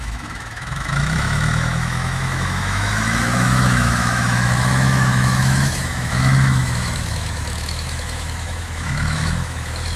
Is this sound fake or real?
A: fake